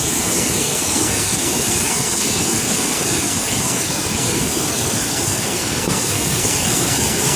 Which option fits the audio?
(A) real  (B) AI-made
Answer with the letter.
B